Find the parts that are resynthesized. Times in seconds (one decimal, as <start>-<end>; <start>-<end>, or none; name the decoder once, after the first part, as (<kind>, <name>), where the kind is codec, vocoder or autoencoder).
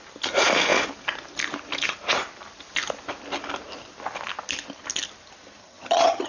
5.6-6.3 (vocoder, HiFi-GAN)